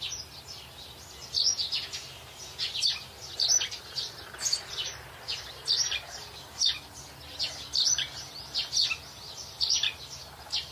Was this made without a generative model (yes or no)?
yes